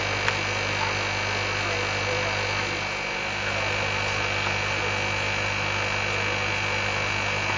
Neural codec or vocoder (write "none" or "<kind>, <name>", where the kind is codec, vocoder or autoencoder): none